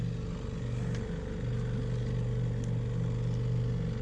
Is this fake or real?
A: real